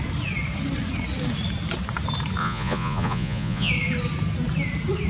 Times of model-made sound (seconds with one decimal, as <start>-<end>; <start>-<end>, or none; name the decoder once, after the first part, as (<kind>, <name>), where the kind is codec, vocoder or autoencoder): 2.4-3.7 (vocoder, Vocos)